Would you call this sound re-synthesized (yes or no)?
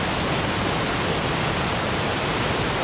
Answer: no